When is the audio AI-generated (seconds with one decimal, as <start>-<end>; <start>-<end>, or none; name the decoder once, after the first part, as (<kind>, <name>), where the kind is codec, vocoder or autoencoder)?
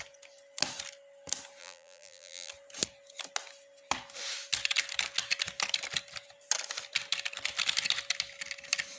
1.6-2.5 (vocoder, BigVGAN v2)